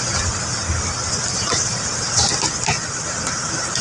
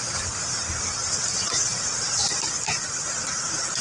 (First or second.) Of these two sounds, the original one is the first